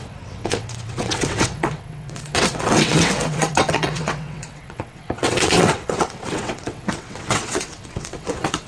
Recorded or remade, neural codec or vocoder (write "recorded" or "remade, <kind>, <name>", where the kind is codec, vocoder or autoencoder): remade, vocoder, WaveNeXt